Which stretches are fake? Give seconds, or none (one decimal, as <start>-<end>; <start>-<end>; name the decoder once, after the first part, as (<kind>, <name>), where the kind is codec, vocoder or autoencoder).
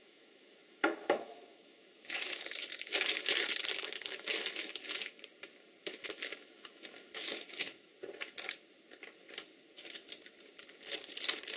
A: 0.0-5.2 (autoencoder, DAC-VAE); 5.8-7.9